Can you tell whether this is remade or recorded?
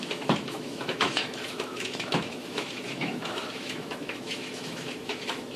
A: remade